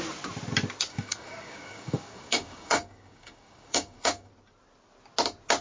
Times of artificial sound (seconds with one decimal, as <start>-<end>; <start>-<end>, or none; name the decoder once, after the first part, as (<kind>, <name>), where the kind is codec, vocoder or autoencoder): 0.9-4.3 (codec, DAC)